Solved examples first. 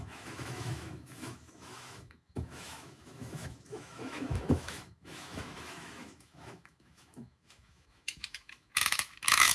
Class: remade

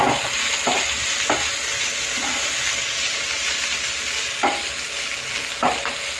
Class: recorded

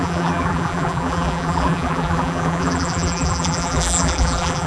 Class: remade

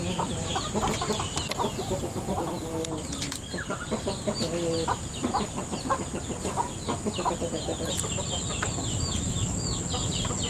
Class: recorded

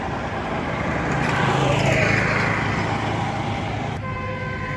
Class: recorded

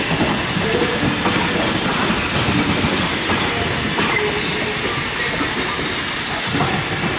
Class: recorded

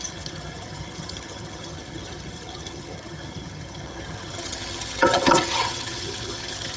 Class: remade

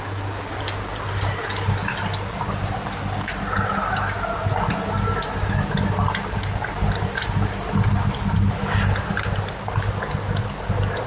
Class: recorded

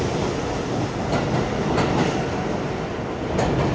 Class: recorded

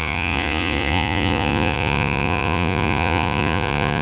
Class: remade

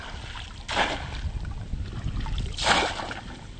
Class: recorded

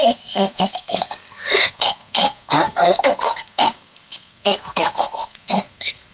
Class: remade